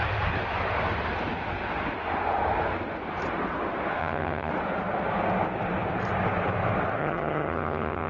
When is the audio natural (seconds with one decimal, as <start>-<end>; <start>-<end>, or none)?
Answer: 0.0-4.0; 4.5-7.0